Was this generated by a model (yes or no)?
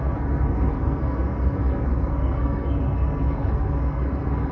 yes